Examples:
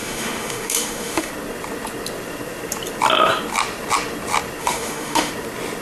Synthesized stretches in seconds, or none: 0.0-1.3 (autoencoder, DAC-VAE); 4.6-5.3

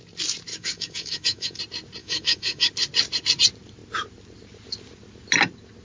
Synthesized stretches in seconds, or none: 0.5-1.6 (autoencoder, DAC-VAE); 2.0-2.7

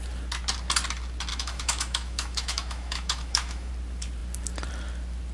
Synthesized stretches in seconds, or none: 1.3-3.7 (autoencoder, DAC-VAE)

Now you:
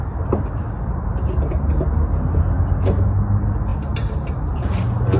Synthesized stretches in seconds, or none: none

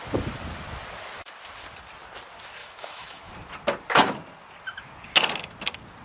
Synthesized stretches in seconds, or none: 2.6-3.3 (autoencoder, DAC-VAE)

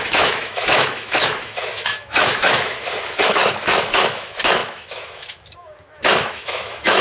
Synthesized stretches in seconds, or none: 0.0-7.0 (autoencoder, DAC-VAE)

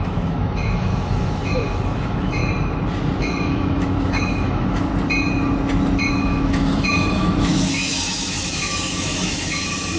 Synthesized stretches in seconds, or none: 0.0-2.4 (autoencoder, DAC-VAE); 3.2-4.9; 6.1-10.0